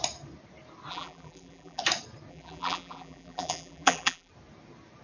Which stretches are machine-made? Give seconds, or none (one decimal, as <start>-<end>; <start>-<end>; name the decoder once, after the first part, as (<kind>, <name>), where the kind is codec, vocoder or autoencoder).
0.9-1.8 (vocoder, BigVGAN v2); 2.3-4.3